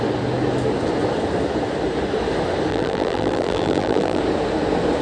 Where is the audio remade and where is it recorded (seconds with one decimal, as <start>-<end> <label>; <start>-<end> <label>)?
0.0-2.7 recorded; 2.7-4.2 remade; 4.2-5.0 recorded